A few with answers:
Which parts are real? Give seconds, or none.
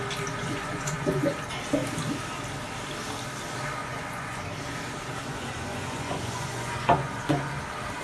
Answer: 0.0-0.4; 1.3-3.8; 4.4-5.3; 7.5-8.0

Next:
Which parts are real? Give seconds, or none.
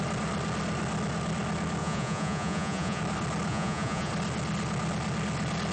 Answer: 0.0-1.8; 3.0-3.5; 4.1-5.7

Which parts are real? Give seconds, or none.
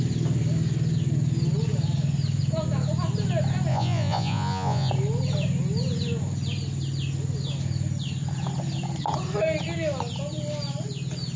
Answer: 0.0-3.7; 4.9-11.4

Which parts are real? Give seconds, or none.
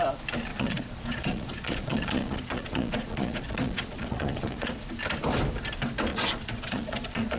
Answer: 0.0-0.5; 4.7-6.1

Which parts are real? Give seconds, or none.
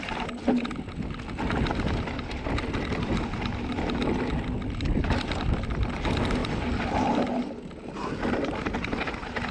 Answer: 0.0-9.5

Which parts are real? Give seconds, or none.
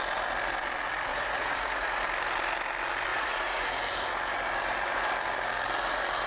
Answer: 0.0-1.1; 2.0-3.1; 3.8-6.3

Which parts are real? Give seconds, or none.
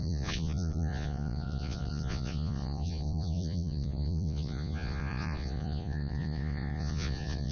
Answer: none